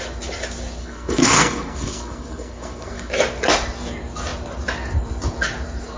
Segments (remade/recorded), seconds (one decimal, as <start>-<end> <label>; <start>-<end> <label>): 0.0-0.8 recorded; 0.8-3.1 remade; 3.1-6.0 recorded